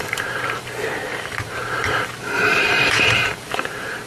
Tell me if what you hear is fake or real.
fake